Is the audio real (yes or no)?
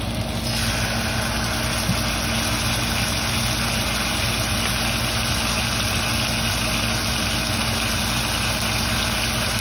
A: yes